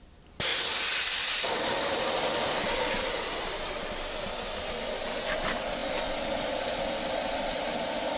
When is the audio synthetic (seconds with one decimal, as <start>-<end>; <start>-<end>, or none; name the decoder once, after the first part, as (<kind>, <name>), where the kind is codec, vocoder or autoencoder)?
none